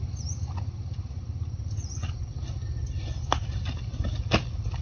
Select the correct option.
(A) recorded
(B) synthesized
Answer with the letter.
A